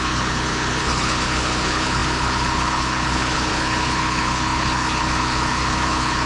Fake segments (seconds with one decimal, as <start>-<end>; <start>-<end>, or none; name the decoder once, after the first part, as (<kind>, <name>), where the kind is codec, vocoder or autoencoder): 0.0-6.3 (codec, HILCodec)